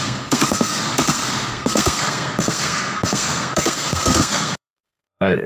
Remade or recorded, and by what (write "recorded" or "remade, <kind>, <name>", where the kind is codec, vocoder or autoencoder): remade, codec, SNAC